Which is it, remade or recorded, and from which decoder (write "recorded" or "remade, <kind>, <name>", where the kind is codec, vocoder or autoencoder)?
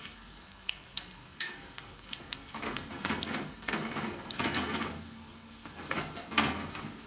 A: remade, codec, SNAC